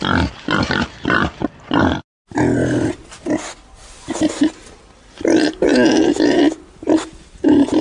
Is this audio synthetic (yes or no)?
no